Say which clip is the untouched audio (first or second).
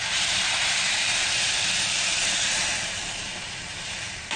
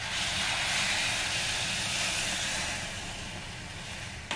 second